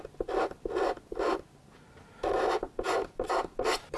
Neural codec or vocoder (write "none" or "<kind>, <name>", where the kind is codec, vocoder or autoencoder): none